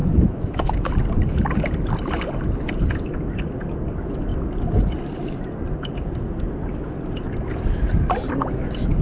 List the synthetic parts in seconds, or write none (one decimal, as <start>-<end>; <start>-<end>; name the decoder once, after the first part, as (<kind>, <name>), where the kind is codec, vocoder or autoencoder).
0.0-0.9 (autoencoder, DAC-VAE)